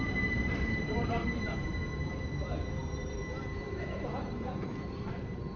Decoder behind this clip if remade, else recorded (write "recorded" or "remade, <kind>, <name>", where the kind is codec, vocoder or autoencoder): remade, vocoder, BigVGAN v2